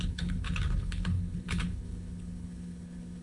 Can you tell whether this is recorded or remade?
remade